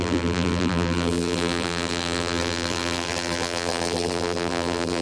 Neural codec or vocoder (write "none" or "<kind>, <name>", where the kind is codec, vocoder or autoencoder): vocoder, BigVGAN v2